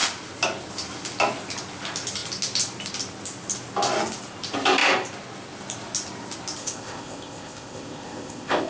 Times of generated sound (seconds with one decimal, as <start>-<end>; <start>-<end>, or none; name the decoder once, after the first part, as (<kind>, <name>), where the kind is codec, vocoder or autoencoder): 6.6-8.7 (codec, ZipCodec)